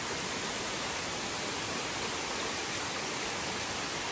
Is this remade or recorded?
recorded